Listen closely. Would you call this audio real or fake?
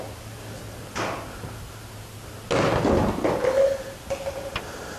real